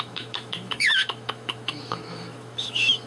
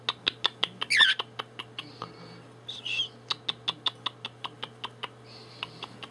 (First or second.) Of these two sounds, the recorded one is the second